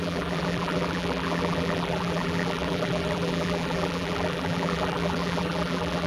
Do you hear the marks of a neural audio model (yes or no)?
yes